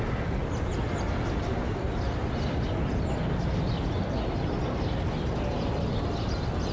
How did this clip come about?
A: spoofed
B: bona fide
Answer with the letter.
B